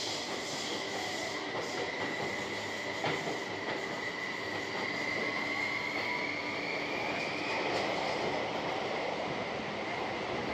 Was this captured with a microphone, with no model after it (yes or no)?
yes